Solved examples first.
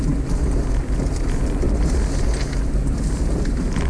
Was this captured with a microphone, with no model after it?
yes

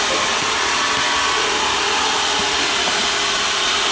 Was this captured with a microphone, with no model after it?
yes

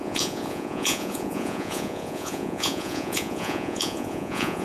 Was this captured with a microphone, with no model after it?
no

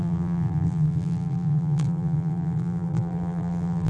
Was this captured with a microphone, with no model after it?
no